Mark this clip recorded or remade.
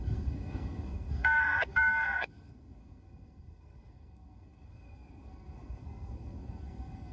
remade